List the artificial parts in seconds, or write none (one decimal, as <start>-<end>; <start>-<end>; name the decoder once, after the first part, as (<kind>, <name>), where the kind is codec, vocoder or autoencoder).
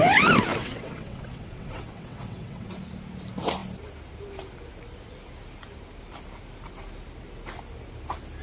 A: 0.5-2.7 (vocoder, WaveNeXt)